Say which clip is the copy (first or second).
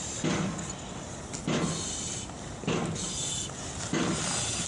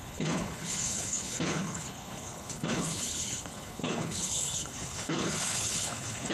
second